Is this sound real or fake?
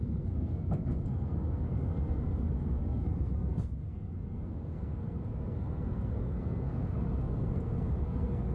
fake